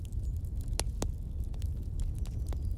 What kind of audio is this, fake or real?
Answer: real